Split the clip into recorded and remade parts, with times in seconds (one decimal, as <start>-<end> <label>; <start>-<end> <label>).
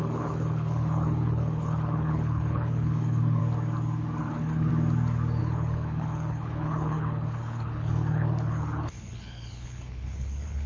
0.0-3.4 remade; 3.4-4.2 recorded; 4.2-4.7 remade; 4.7-5.4 recorded; 5.4-10.7 remade